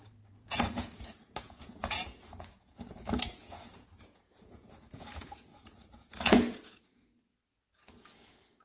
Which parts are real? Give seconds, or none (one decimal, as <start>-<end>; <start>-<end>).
none